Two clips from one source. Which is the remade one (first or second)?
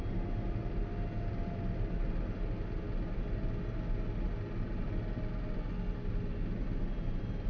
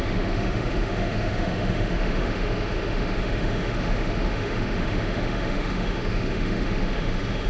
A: second